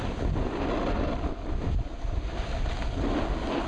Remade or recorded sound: recorded